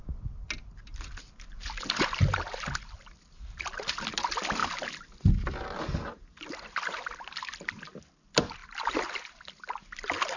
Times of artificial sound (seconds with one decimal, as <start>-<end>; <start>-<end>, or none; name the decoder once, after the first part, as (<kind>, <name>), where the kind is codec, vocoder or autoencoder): none

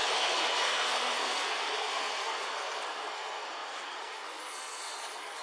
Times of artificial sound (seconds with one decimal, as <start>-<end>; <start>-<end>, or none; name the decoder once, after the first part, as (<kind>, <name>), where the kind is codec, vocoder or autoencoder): 0.0-5.4 (codec, SNAC)

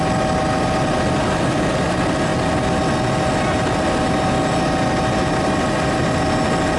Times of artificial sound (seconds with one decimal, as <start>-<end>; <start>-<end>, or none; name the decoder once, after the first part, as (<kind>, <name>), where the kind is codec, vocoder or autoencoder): none

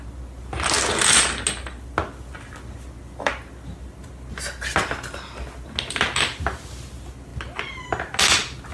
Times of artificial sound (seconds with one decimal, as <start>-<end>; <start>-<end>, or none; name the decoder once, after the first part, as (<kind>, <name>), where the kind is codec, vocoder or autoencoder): none

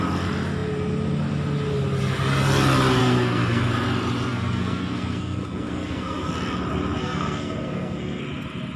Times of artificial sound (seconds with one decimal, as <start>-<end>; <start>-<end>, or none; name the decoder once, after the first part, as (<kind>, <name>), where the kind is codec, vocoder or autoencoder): 3.0-3.7 (codec, SNAC); 4.3-6.3; 7.0-8.2

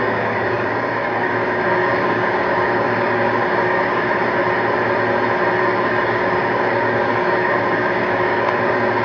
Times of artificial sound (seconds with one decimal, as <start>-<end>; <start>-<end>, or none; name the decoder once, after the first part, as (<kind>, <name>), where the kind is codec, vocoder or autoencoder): 0.0-4.4 (codec, DAC); 5.6-9.0

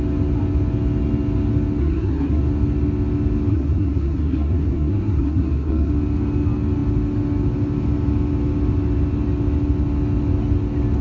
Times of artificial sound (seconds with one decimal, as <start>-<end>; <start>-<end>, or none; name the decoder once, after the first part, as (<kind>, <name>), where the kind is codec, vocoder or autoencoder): 1.8-2.4 (codec, SNAC); 3.5-5.9